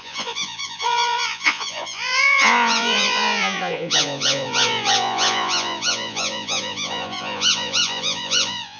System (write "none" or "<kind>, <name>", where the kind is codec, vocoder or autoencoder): vocoder, Vocos